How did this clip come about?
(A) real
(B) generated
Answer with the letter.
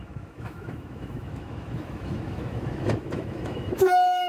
B